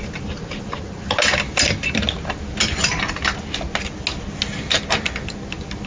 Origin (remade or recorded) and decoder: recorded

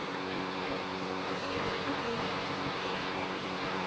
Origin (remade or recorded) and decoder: remade, codec, SNAC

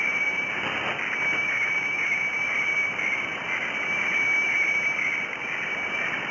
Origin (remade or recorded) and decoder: recorded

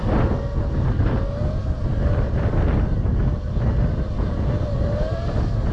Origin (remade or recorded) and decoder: recorded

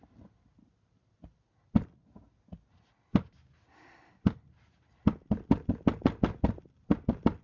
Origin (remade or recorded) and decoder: recorded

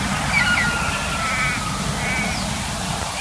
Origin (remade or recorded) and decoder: recorded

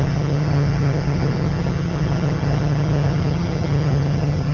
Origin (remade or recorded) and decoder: remade, vocoder, HiFi-GAN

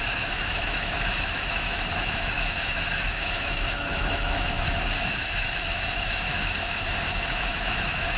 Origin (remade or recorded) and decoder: remade, autoencoder, DAC-VAE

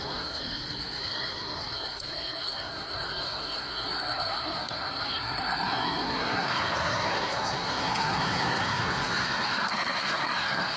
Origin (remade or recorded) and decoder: remade, codec, SNAC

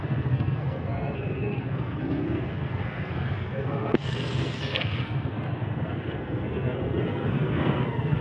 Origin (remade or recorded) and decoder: remade, codec, SNAC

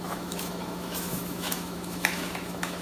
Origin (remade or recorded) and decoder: remade, autoencoder, DAC-VAE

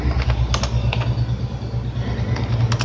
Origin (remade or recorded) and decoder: recorded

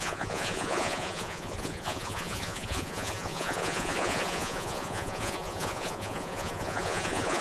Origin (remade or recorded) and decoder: remade, vocoder, Vocos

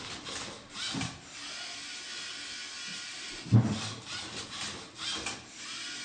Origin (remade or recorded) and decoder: recorded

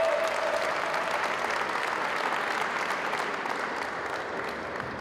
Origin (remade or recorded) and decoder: recorded